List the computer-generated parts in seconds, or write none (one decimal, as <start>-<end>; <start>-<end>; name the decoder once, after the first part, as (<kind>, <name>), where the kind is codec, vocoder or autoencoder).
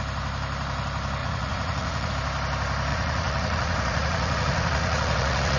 1.2-2.1 (vocoder, Vocos); 2.9-5.6